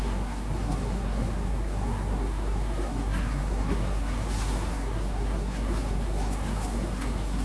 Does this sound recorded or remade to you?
remade